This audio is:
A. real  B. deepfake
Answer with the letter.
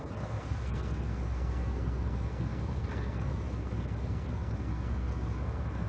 B